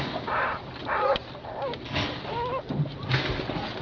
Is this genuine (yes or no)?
yes